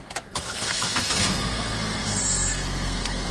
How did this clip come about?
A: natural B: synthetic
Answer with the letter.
B